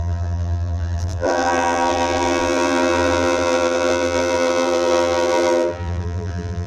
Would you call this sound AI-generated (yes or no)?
yes